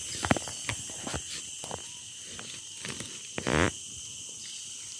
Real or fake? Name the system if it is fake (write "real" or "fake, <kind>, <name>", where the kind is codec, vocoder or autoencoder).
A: real